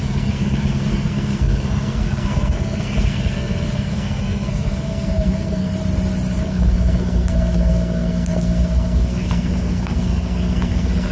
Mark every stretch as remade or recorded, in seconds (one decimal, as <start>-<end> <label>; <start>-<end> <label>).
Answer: 0.0-5.7 remade; 5.7-6.4 recorded; 6.4-11.1 remade